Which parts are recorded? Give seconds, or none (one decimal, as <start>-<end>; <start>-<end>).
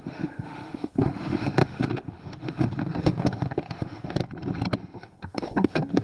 4.2-5.0